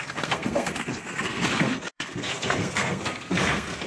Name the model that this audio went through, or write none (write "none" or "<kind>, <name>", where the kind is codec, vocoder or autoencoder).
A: codec, SNAC